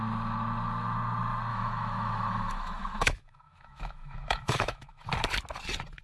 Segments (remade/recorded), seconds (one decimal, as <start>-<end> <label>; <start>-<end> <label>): 0.0-1.5 recorded; 1.5-5.1 remade; 5.1-6.0 recorded